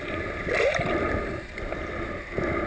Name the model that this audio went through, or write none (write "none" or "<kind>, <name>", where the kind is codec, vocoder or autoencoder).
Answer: none